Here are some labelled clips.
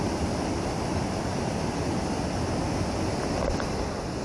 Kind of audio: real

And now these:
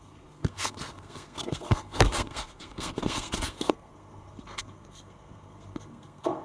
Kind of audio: fake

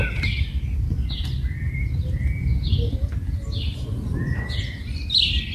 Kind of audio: real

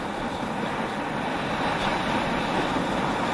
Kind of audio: real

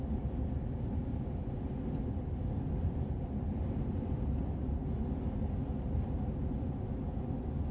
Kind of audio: real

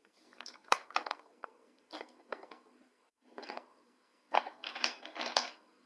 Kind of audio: fake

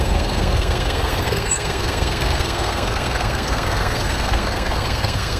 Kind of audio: fake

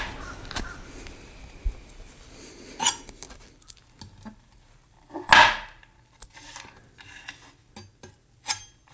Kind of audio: real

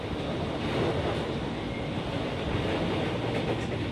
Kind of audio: real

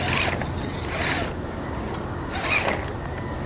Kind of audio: real